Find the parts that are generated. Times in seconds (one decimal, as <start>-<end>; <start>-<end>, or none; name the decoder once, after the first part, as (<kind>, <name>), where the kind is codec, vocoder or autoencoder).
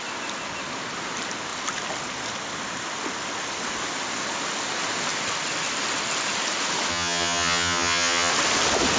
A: 6.9-8.3 (vocoder, HiFi-GAN)